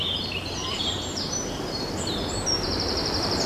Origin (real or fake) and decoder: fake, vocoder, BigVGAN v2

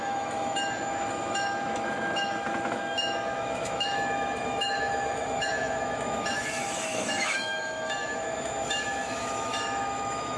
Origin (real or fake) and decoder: fake, autoencoder, DAC-VAE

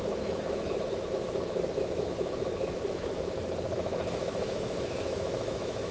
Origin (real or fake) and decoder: fake, autoencoder, DAC-VAE